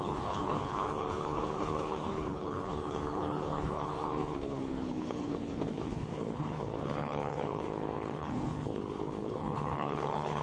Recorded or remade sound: remade